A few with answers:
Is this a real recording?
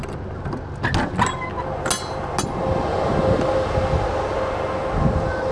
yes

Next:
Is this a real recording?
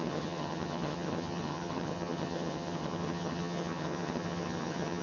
no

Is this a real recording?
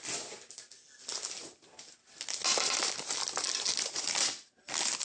yes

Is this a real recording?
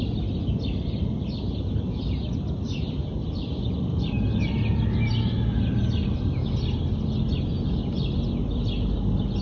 yes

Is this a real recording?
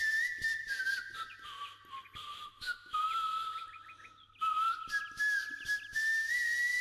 yes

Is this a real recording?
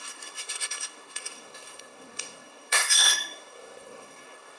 no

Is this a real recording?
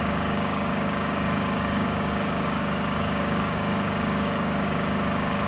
no